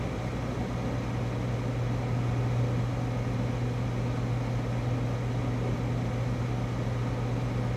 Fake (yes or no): no